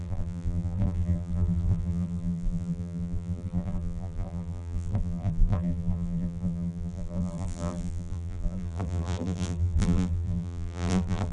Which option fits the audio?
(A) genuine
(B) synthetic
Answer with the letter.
B